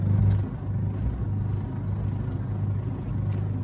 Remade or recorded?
recorded